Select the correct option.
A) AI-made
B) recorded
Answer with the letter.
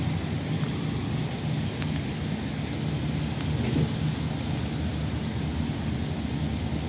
B